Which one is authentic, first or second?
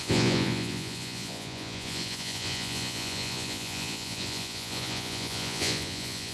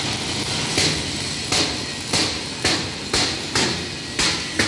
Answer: second